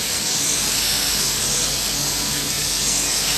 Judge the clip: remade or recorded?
remade